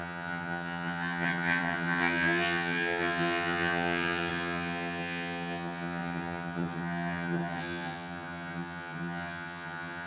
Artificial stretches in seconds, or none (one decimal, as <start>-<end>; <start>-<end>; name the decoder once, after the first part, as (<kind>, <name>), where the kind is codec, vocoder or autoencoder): 0.0-10.1 (vocoder, HiFi-GAN)